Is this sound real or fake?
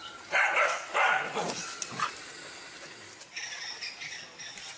fake